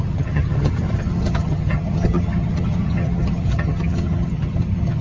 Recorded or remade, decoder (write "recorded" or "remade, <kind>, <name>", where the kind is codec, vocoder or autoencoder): remade, vocoder, HiFi-GAN